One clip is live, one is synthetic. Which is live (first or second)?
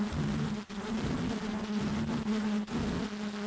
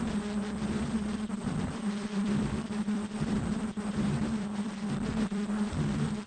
first